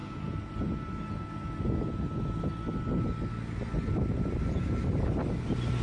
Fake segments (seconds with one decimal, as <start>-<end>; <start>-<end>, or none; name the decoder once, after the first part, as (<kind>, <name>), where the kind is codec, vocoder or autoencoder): none

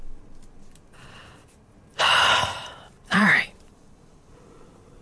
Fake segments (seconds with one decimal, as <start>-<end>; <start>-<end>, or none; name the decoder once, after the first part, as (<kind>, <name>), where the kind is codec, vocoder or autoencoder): 1.4-4.4 (vocoder, BigVGAN v2)